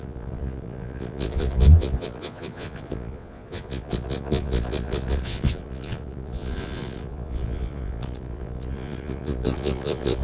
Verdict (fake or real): fake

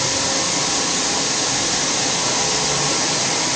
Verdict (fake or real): real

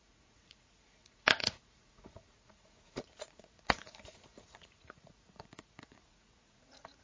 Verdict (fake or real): fake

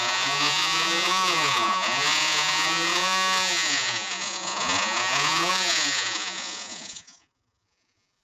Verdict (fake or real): fake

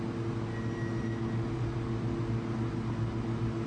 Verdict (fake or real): real